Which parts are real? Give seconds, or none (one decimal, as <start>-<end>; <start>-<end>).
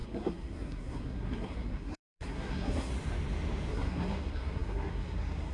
2.9-3.7